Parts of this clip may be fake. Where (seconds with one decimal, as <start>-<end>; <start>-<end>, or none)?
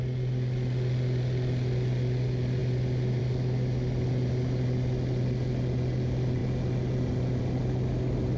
none